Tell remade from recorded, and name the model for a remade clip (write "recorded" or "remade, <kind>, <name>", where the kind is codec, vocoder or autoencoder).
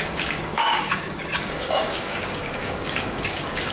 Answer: remade, codec, DAC